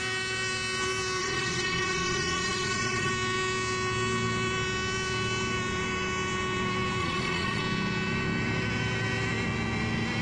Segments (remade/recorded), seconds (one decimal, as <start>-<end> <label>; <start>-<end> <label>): 0.0-1.2 recorded; 1.2-3.1 remade; 3.1-7.0 recorded; 7.0-7.6 remade; 7.6-10.2 recorded